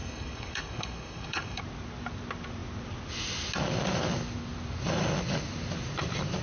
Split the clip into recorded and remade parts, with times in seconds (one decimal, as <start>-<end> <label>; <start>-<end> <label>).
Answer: 0.0-1.6 remade; 1.6-6.4 recorded